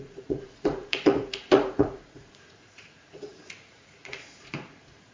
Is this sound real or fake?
fake